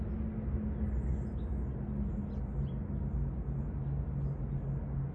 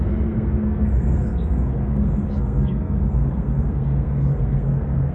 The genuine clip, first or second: first